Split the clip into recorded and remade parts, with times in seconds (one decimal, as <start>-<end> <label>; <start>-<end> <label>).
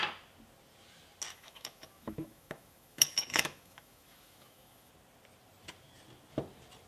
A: 0.0-1.3 recorded; 1.3-4.9 remade; 4.9-6.9 recorded